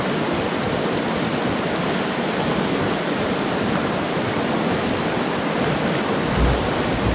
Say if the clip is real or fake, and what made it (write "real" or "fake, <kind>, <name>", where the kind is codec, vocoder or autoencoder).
real